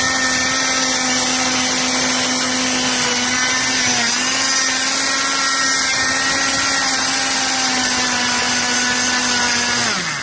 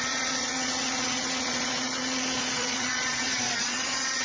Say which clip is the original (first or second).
first